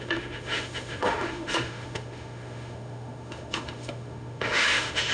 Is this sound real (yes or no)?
no